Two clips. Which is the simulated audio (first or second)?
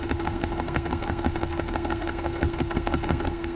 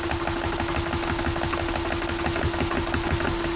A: first